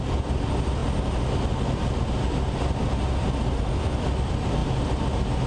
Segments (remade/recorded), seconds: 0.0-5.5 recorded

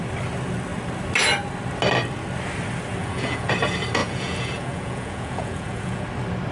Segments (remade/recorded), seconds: 0.0-3.0 recorded; 3.0-3.5 remade; 3.5-4.0 recorded; 4.0-6.0 remade; 6.0-6.5 recorded

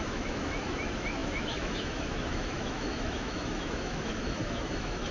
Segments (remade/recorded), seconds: 0.0-5.1 remade